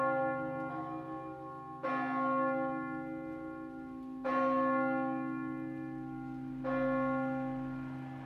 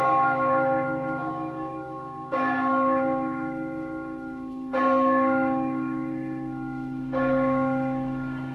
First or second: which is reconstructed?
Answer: second